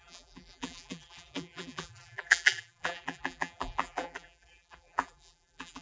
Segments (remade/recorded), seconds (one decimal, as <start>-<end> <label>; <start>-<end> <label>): 0.0-5.8 remade